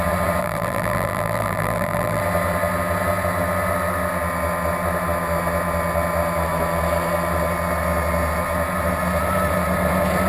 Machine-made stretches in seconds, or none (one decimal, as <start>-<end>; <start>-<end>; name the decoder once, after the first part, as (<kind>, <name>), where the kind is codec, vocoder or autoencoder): 0.4-2.2 (vocoder, BigVGAN v2)